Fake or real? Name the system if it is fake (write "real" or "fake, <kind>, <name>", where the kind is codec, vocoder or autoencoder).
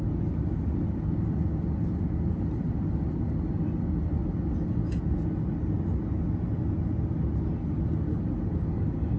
real